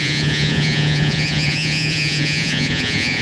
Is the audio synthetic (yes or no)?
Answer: yes